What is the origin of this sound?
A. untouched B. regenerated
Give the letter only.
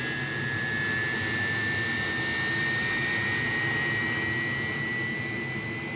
A